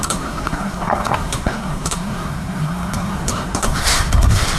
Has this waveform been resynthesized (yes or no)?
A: yes